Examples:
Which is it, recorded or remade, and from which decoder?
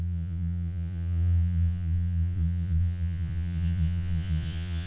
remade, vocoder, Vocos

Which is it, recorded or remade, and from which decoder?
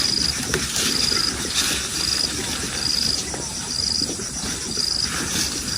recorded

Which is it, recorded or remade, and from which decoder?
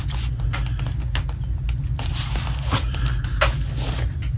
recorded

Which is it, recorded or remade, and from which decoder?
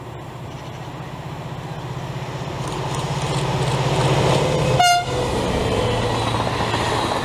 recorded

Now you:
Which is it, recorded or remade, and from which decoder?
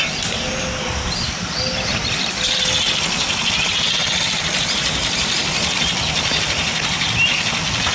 recorded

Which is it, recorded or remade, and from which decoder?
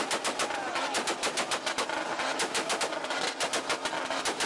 recorded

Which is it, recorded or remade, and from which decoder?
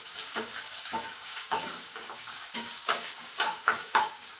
remade, codec, DAC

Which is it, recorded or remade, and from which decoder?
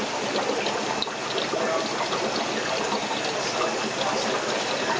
recorded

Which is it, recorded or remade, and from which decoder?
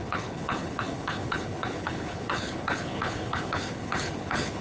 remade, codec, HILCodec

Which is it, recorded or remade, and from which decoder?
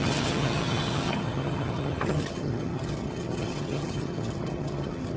remade, vocoder, HiFi-GAN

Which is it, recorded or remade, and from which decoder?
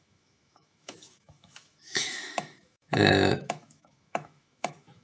remade, autoencoder, DAC-VAE